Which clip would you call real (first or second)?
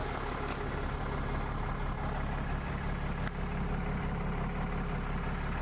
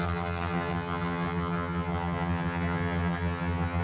first